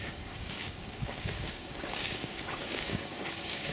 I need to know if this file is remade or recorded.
remade